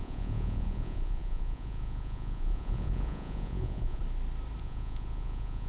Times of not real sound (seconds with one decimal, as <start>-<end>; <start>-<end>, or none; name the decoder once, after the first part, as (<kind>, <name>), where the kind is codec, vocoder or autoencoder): 0.0-4.0 (vocoder, Vocos); 4.6-5.7